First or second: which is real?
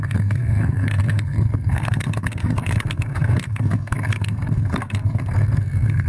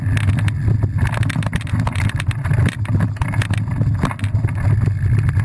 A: second